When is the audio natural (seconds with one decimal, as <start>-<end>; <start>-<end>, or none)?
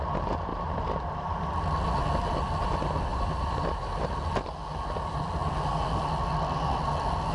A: 0.0-3.1; 4.1-7.3